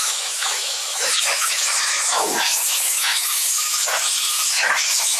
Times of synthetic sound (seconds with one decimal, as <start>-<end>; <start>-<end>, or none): 0.0-5.2